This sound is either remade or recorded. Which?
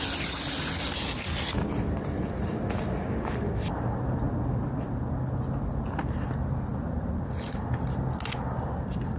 recorded